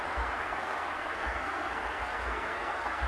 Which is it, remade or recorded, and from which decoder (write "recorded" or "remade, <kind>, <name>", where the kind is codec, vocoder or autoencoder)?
remade, codec, SNAC